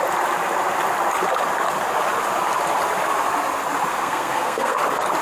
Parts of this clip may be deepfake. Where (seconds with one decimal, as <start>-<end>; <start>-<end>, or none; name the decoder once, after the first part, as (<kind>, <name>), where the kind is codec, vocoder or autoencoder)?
3.9-4.8 (codec, SNAC)